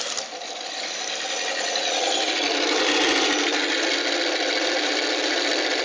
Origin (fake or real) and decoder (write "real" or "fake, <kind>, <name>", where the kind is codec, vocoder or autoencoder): real